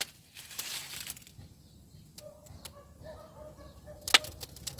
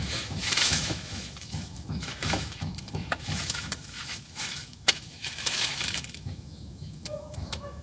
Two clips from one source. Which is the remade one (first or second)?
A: second